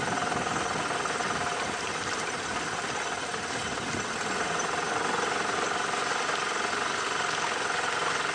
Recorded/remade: recorded